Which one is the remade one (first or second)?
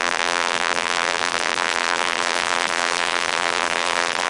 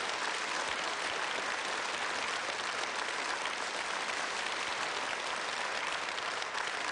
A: first